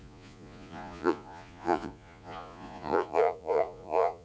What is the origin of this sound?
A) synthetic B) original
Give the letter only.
A